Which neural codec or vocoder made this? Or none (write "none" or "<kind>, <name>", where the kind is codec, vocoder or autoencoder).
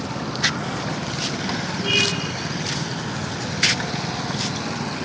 none